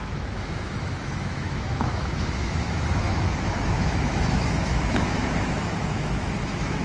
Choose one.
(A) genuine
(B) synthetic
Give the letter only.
B